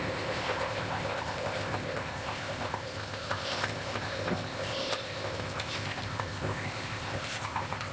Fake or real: fake